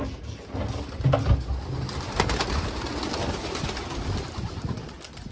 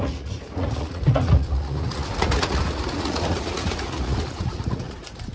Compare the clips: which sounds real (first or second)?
first